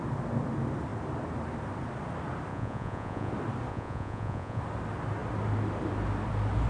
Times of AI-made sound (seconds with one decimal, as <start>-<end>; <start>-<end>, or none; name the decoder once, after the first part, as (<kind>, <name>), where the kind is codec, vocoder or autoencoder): 2.5-3.3 (vocoder, Vocos); 3.7-4.6